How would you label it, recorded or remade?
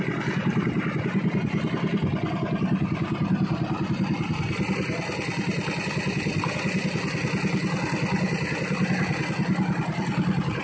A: recorded